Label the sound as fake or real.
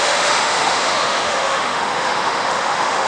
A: fake